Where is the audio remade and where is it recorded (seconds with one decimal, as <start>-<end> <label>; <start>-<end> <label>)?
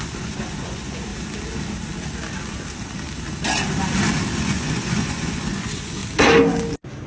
0.0-1.1 remade; 1.1-4.4 recorded; 4.4-6.0 remade; 6.0-7.1 recorded